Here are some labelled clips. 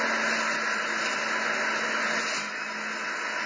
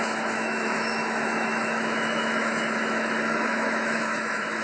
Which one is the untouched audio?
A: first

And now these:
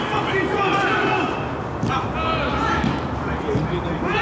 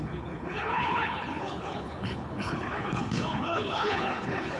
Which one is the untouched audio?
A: first